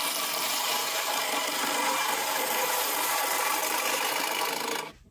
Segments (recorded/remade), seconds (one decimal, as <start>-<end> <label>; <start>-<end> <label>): 0.0-5.1 recorded